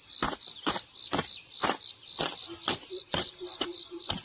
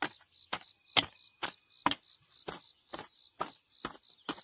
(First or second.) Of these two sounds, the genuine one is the second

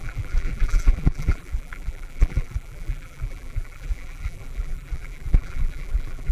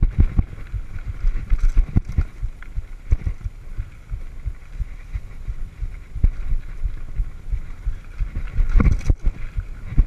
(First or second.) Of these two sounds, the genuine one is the second